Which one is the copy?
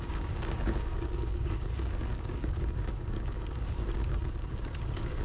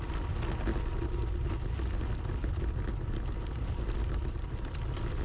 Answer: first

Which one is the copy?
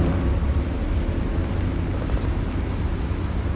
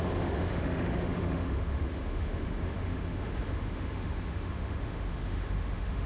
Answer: second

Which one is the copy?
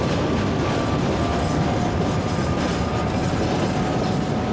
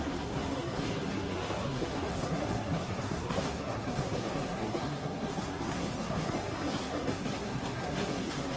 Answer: second